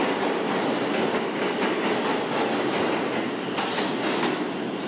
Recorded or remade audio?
recorded